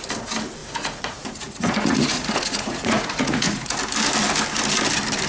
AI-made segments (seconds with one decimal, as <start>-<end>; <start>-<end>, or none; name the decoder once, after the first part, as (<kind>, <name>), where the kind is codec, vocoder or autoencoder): 0.6-3.8 (vocoder, Vocos)